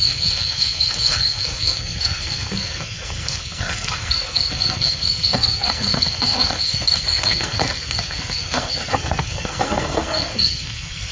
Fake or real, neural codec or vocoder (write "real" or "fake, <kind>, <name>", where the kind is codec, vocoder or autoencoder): fake, codec, SNAC